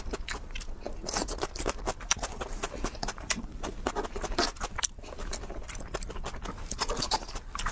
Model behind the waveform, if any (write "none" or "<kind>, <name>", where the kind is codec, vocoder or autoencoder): none